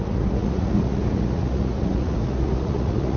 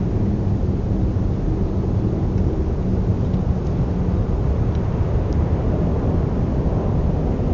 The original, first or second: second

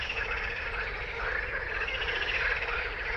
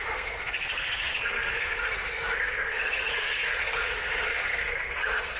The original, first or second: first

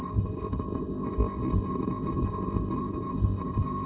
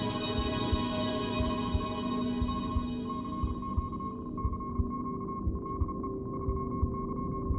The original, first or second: second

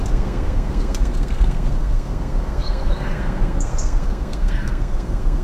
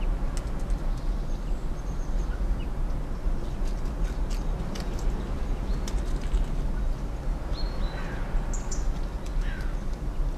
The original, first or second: second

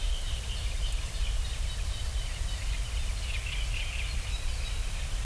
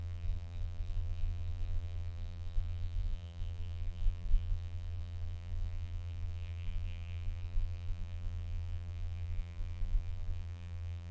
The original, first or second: first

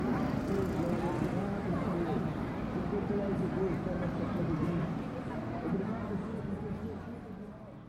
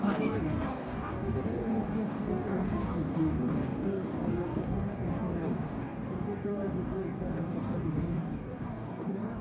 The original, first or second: first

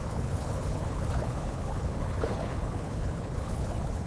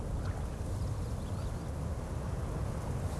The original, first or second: second